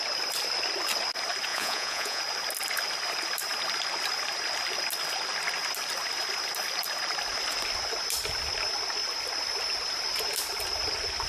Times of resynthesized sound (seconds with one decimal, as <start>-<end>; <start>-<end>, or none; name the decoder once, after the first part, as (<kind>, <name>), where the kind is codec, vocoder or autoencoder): 1.5-2.2 (vocoder, Vocos)